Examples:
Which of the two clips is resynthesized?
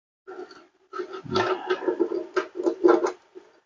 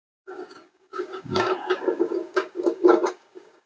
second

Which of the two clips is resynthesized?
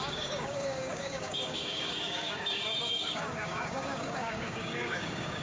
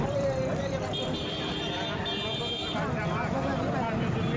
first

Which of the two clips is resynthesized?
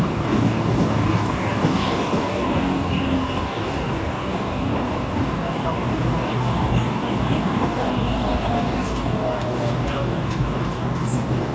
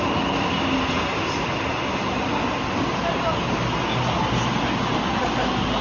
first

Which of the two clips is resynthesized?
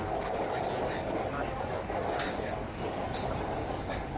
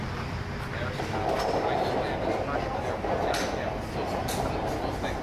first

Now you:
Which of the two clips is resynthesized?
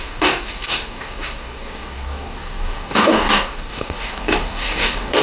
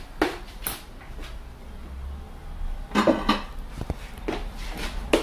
first